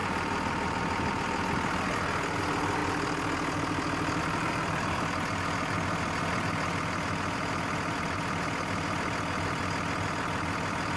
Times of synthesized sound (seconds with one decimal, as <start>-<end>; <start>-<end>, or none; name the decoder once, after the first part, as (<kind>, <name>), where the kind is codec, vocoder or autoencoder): none